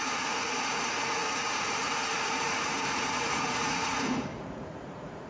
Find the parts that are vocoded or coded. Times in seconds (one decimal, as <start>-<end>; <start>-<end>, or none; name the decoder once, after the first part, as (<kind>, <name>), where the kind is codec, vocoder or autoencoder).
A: 0.0-5.3 (vocoder, Vocos)